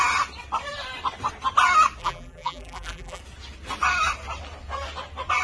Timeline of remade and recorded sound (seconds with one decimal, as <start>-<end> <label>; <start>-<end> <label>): 0.0-2.0 recorded; 2.0-3.2 remade; 3.2-5.4 recorded